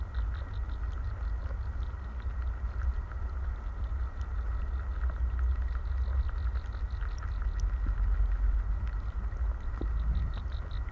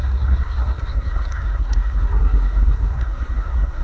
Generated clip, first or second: second